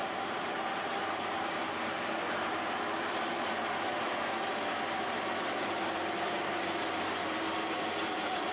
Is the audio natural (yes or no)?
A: yes